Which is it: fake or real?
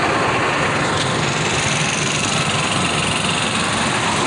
real